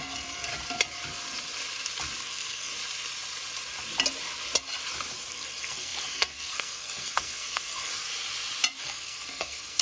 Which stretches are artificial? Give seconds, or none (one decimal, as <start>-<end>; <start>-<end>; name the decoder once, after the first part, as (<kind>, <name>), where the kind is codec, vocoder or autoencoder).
0.0-0.5 (codec, SNAC); 2.2-2.7; 5.3-7.9; 8.8-9.8